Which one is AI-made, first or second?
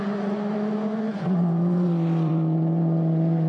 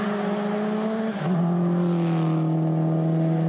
first